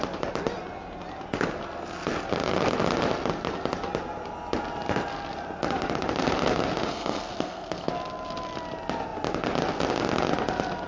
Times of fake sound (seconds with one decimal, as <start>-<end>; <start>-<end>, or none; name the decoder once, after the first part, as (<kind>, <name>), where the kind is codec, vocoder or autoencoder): 6.9-7.9 (codec, SNAC)